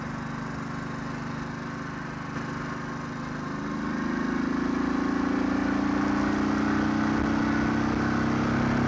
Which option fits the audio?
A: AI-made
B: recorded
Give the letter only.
B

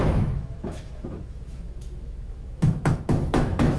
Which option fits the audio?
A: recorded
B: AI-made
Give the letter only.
B